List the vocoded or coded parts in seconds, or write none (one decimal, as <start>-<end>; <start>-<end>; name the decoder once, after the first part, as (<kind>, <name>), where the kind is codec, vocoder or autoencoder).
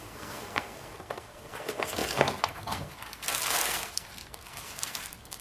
0.0-5.4 (codec, SNAC)